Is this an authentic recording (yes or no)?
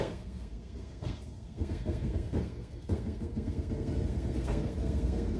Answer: no